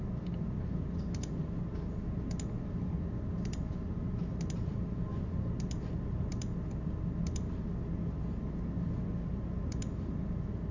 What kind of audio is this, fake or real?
real